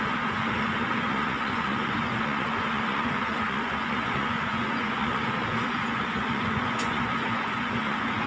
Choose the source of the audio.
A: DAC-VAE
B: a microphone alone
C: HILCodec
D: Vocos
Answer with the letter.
D